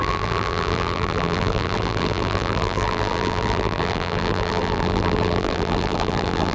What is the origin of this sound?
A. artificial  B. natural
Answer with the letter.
A